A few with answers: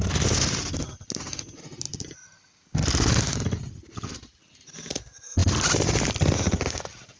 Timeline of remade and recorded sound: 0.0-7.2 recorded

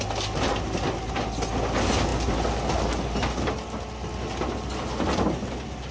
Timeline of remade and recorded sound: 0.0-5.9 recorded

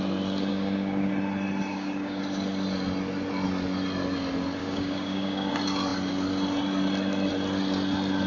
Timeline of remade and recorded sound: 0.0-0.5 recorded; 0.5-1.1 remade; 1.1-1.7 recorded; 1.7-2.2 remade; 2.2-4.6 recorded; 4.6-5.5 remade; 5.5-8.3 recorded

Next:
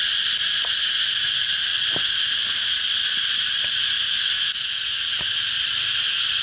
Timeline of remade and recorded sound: 0.0-6.4 recorded